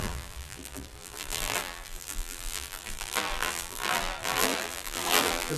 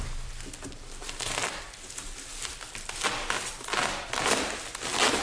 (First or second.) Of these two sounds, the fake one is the first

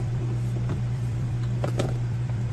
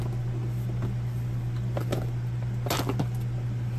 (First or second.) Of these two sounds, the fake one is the first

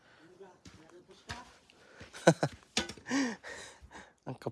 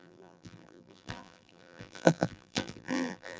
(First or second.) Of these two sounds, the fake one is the second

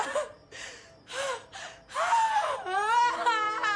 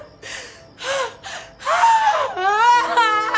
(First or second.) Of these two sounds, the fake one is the first